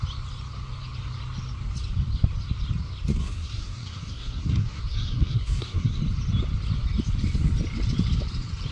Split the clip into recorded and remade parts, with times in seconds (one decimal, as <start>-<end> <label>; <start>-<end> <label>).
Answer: 0.0-3.2 recorded; 3.2-6.0 remade; 6.0-8.7 recorded